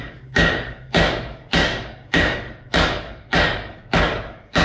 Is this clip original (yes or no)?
no